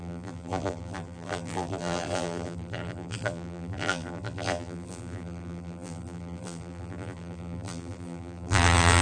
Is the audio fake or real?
fake